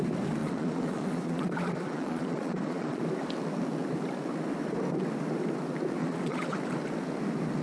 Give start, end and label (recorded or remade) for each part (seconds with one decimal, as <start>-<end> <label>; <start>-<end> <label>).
0.0-0.4 recorded; 0.4-3.0 remade; 3.0-6.0 recorded; 6.0-6.6 remade; 6.6-7.6 recorded